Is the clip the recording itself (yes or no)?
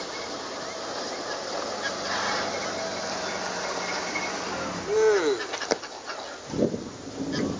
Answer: yes